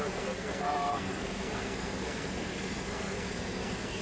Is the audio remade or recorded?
remade